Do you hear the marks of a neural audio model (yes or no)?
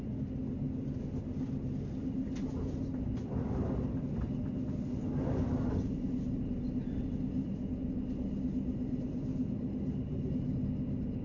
no